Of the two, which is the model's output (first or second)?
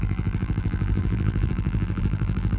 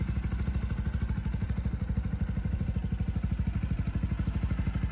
first